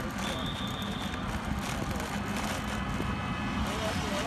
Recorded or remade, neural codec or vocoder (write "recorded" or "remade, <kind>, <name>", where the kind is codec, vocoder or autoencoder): recorded